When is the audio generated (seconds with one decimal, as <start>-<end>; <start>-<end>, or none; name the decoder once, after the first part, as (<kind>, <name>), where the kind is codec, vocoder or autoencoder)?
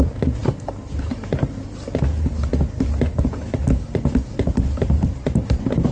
0.0-0.4 (vocoder, BigVGAN v2); 1.0-2.5; 4.5-5.9